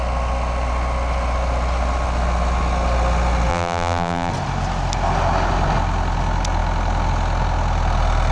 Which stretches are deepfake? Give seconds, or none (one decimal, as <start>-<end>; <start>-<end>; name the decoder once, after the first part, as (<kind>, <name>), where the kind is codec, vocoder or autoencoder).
3.5-4.3 (vocoder, BigVGAN v2)